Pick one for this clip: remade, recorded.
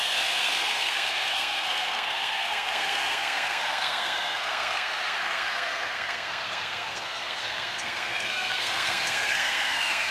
remade